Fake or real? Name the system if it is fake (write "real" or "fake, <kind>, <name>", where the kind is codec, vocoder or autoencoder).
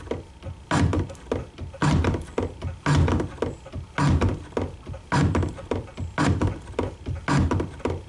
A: real